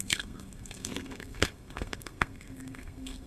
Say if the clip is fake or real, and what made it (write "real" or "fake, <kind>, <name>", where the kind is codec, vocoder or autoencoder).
fake, codec, SNAC